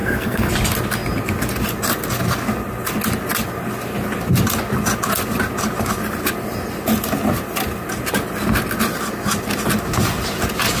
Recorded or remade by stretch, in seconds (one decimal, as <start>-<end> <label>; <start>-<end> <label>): 0.0-0.5 remade; 0.5-10.8 recorded